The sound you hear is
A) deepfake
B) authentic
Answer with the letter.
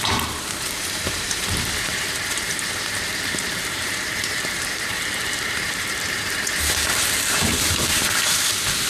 A